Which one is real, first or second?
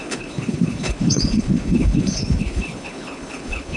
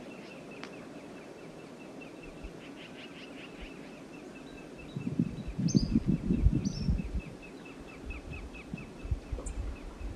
second